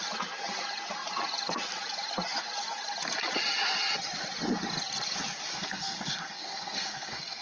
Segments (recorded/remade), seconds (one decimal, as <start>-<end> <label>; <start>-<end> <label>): 0.0-5.5 recorded; 5.5-7.4 remade